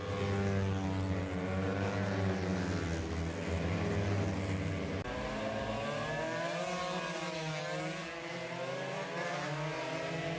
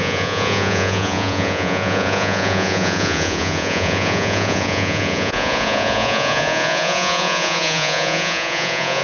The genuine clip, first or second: first